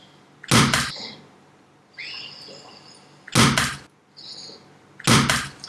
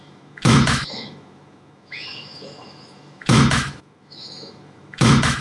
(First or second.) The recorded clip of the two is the first